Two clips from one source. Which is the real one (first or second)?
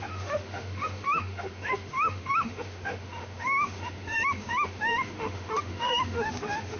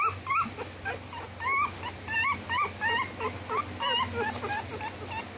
second